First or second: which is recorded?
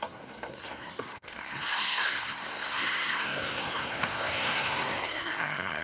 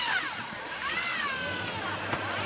second